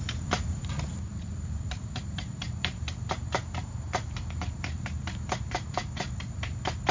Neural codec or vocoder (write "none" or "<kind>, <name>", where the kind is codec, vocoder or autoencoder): vocoder, BigVGAN v2